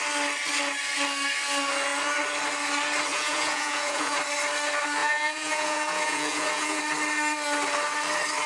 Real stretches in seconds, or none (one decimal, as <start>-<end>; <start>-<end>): 0.0-3.1; 4.2-5.0; 6.8-8.5

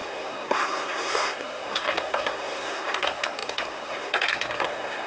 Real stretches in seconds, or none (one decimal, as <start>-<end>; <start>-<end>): none

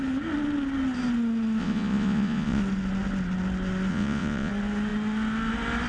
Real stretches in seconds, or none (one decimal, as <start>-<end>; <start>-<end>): 0.0-1.6; 2.6-3.9; 4.5-5.9

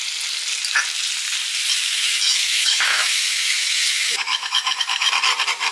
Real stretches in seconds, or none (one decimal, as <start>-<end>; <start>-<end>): 0.0-1.7; 5.1-5.7

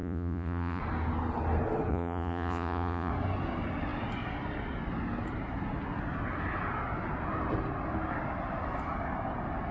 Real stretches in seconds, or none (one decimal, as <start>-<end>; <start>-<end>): 0.8-1.9; 3.1-9.7

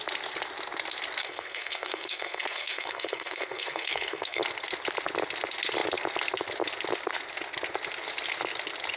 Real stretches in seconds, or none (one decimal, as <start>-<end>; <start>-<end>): 0.0-1.2; 4.4-9.0

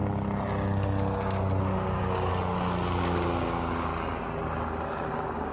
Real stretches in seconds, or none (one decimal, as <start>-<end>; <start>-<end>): 0.0-1.6; 2.3-3.0; 3.9-4.8

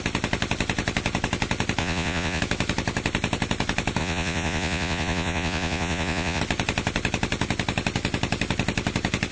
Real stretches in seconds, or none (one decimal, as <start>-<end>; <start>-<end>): 0.0-1.8; 2.4-4.0; 6.4-9.3